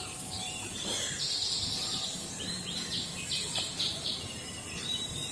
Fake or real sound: fake